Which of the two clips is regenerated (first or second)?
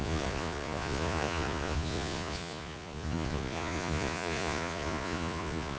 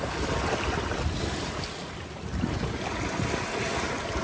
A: first